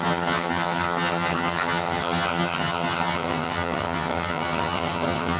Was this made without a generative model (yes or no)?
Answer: no